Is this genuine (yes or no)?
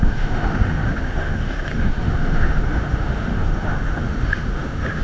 no